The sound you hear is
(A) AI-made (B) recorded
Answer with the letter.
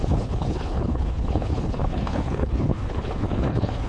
A